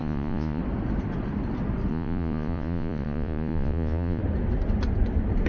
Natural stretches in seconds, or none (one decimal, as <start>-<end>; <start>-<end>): 0.6-1.9; 4.2-5.5